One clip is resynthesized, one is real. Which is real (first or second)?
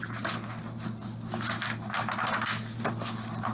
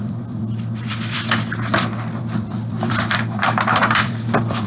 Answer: first